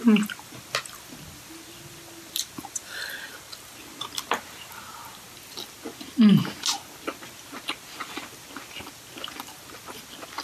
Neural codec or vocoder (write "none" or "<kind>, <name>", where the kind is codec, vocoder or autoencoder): none